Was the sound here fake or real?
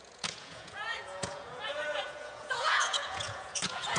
fake